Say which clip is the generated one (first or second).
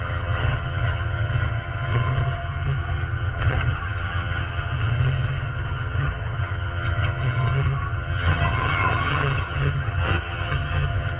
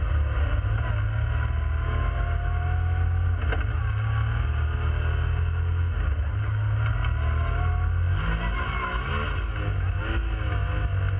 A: first